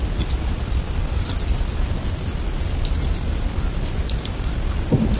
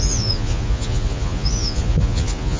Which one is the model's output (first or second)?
second